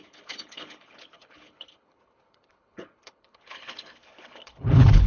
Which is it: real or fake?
fake